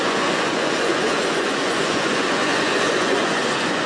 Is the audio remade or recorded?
remade